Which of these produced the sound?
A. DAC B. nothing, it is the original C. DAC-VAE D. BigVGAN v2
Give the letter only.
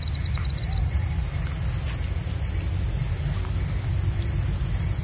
B